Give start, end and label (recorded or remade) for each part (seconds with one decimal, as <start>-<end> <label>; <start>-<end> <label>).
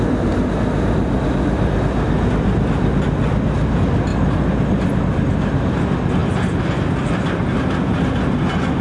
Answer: 0.0-8.8 recorded